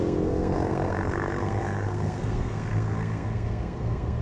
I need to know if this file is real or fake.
fake